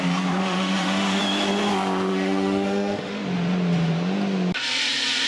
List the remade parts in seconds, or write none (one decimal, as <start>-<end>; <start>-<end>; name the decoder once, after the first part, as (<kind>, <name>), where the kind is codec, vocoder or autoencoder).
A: 0.4-1.2 (autoencoder, DAC-VAE); 2.1-3.2